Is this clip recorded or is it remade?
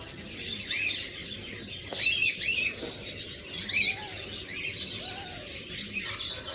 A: recorded